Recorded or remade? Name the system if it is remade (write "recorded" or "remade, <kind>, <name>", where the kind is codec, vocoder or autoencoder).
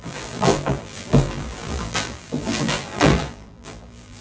remade, vocoder, BigVGAN v2